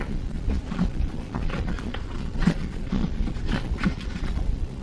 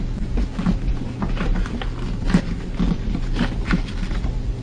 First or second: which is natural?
second